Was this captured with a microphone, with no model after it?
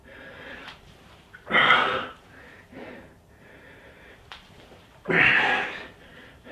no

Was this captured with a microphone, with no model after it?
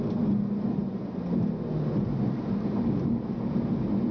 yes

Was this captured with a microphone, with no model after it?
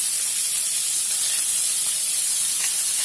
yes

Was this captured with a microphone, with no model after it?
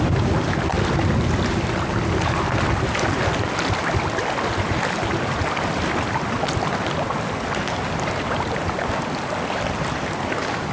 yes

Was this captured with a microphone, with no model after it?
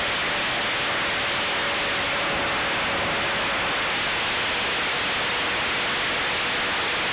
yes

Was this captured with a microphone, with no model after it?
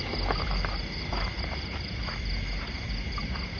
no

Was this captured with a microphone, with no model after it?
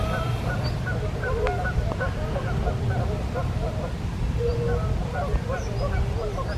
yes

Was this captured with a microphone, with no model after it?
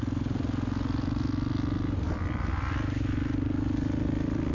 yes